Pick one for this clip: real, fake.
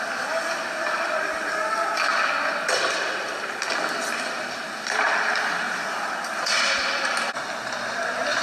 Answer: real